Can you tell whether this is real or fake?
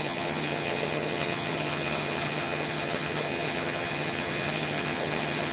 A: fake